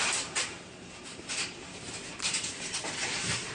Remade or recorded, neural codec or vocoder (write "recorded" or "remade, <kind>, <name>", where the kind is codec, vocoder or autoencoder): remade, vocoder, BigVGAN v2